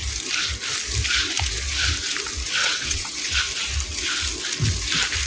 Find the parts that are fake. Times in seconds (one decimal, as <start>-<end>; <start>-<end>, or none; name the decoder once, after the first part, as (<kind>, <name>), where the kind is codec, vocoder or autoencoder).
2.6-3.4 (vocoder, WaveNeXt)